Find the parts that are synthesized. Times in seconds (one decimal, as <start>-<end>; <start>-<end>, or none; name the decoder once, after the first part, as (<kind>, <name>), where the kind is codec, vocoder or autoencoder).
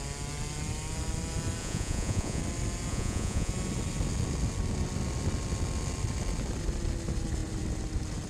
1.6-2.4 (vocoder, Vocos); 2.9-3.5